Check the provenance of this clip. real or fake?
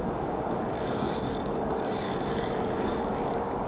fake